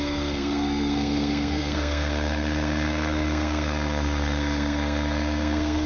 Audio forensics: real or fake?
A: fake